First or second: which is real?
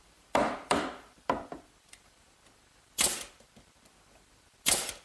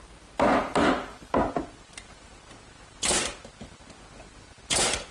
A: second